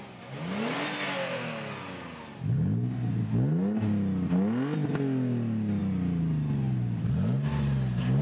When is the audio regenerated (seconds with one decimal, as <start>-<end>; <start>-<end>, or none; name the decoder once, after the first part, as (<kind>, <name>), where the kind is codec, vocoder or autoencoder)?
5.8-7.1 (vocoder, BigVGAN v2)